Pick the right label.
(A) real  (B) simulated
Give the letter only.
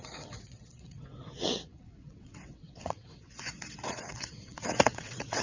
B